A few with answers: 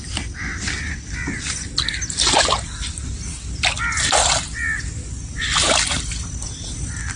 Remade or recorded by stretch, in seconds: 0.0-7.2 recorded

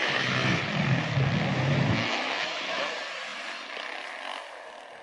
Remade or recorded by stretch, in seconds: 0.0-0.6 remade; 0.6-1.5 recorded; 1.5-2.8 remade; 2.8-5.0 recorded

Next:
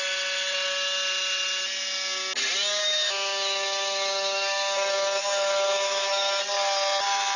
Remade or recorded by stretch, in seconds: 0.0-2.8 recorded; 2.8-6.4 remade; 6.4-7.4 recorded

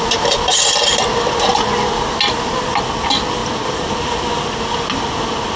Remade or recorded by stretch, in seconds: 0.0-5.6 recorded